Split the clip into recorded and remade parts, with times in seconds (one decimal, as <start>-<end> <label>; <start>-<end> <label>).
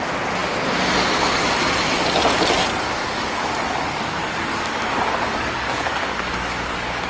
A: 0.0-3.0 recorded; 3.0-7.1 remade